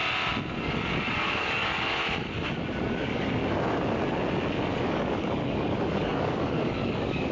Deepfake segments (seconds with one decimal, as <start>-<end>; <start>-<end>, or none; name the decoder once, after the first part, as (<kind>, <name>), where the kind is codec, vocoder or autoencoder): 0.6-2.0 (codec, DAC); 2.7-3.4; 4.7-7.3